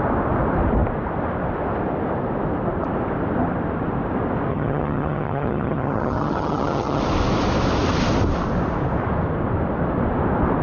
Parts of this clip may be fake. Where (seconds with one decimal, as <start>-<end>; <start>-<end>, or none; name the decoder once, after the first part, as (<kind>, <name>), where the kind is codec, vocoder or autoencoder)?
4.5-7.0 (vocoder, HiFi-GAN)

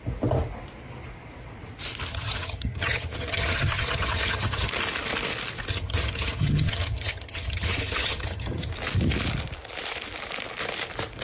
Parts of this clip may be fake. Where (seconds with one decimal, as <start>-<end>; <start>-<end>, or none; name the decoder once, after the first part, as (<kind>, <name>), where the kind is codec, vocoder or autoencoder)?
2.1-4.7 (vocoder, HiFi-GAN); 5.7-8.7

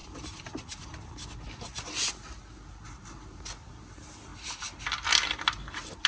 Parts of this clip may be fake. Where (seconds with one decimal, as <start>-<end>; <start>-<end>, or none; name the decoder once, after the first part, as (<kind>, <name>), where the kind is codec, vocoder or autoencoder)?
none